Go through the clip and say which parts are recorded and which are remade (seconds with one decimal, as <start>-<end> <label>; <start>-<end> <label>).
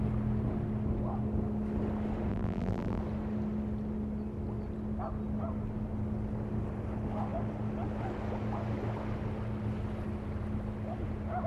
0.0-2.3 recorded; 2.3-3.0 remade; 3.0-11.5 recorded